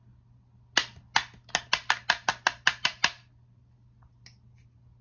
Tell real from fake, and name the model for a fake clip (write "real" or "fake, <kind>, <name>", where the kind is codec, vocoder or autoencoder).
real